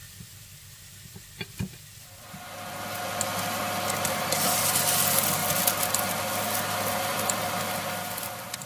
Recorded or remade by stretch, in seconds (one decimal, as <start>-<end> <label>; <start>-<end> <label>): 0.0-8.7 recorded